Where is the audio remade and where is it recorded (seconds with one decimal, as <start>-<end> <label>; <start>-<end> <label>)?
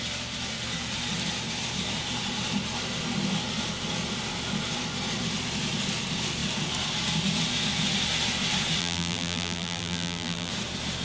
0.0-8.8 recorded; 8.8-10.5 remade; 10.5-11.0 recorded